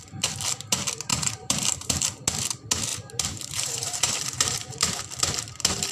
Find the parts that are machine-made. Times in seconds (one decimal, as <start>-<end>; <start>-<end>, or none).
1.1-2.0; 2.9-5.0